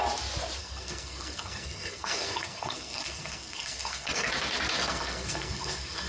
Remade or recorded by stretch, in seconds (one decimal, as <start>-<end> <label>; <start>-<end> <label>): 0.0-0.6 recorded; 0.6-4.3 remade; 4.3-4.8 recorded; 4.8-6.1 remade